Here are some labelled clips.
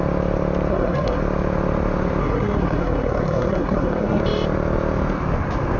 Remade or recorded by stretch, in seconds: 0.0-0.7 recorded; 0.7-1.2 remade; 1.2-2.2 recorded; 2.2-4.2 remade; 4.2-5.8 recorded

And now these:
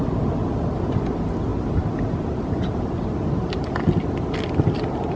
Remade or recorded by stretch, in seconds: 0.0-5.2 recorded

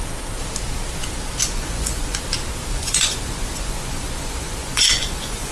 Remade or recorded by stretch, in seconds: 0.0-1.4 recorded; 1.4-2.2 remade; 2.2-2.7 recorded; 2.7-5.5 remade

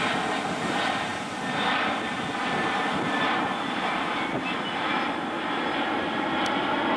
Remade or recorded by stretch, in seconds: 0.0-7.0 recorded

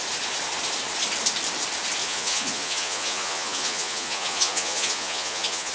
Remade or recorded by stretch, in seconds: 0.0-2.0 recorded; 2.0-5.7 remade

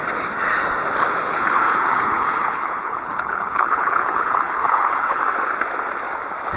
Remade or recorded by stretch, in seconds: 0.0-1.2 recorded; 1.2-5.2 remade; 5.2-6.6 recorded